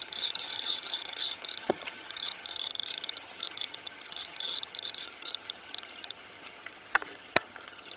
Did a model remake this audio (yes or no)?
yes